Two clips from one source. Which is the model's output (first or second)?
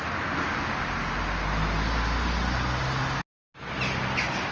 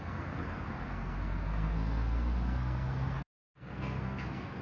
second